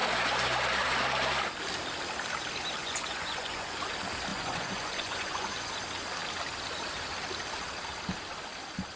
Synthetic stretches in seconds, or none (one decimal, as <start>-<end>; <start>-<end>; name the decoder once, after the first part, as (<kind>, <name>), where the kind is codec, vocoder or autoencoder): 2.8-3.9 (vocoder, Vocos); 4.3-5.7